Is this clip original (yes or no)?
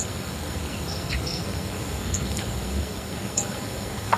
no